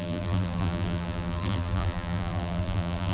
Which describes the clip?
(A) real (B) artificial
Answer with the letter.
B